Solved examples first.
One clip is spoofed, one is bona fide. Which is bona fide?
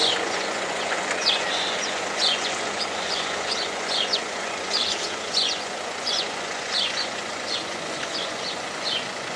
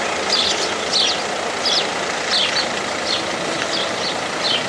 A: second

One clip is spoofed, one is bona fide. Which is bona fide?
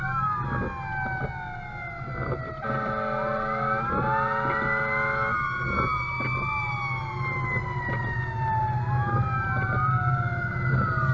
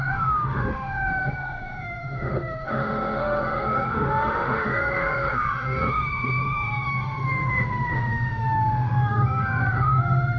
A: first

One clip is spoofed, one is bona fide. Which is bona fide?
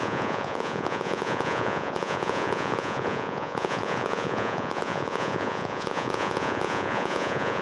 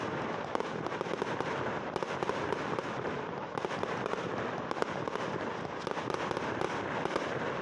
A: second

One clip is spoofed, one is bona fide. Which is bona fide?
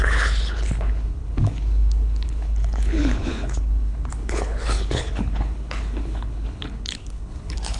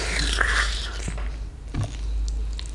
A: second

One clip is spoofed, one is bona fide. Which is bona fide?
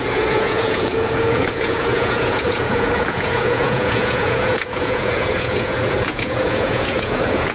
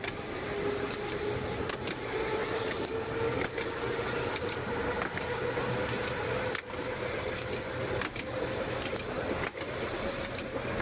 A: second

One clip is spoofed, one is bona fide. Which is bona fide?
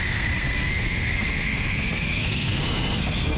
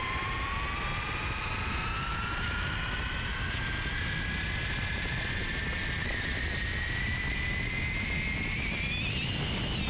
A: second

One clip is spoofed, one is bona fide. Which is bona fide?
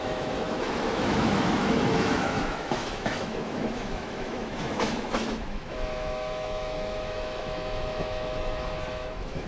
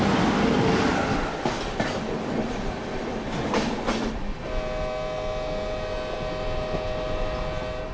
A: second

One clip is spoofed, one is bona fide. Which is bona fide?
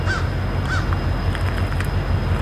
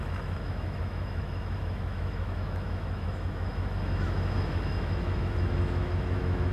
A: first